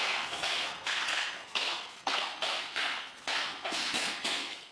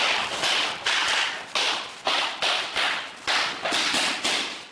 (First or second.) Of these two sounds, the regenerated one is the first